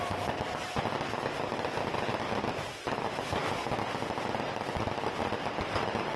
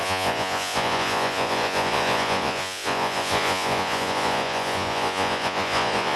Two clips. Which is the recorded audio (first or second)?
first